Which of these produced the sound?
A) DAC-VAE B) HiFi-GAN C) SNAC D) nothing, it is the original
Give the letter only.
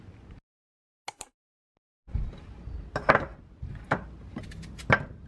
D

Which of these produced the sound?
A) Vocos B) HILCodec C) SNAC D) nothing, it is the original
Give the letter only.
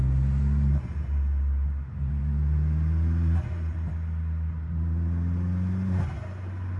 D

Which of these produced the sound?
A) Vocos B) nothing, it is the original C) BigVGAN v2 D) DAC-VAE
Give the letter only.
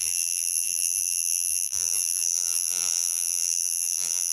C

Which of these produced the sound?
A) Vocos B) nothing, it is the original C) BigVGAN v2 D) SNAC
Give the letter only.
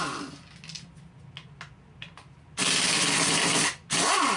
B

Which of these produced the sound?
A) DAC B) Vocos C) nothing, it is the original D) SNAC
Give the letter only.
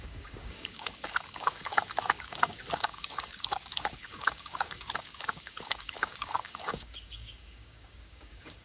A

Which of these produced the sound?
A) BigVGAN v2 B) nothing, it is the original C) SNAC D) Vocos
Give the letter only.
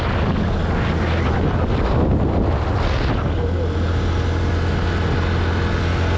B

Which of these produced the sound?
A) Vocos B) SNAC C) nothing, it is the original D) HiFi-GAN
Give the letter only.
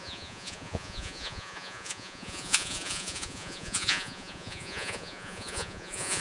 A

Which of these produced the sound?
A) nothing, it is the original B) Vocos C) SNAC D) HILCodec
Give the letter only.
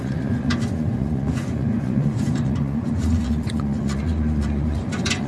B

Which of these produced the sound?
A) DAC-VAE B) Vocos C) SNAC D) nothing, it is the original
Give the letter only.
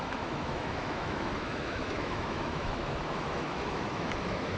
A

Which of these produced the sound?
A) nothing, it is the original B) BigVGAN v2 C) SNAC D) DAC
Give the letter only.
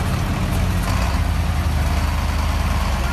A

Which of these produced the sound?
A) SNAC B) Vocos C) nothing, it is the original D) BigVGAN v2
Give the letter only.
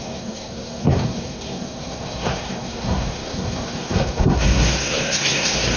A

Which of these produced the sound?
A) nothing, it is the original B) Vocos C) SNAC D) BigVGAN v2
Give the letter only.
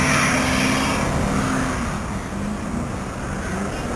A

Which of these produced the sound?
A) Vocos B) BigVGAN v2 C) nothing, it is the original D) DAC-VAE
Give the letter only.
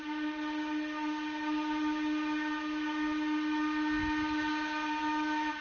C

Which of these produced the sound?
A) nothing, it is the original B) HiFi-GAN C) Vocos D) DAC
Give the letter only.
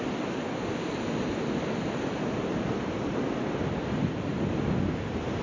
A